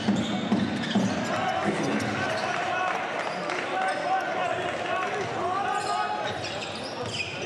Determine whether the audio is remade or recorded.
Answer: recorded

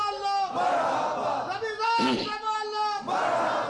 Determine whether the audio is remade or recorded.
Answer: recorded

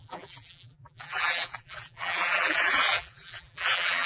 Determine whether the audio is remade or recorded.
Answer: remade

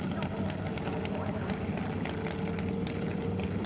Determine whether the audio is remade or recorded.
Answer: recorded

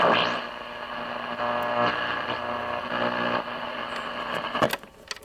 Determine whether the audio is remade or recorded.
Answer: recorded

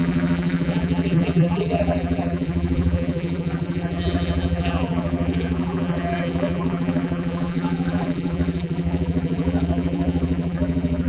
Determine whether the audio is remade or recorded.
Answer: remade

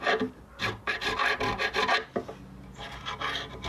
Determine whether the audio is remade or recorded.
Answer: recorded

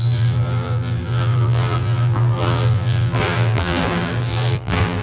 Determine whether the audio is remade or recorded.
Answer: remade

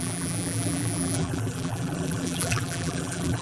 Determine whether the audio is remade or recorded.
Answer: remade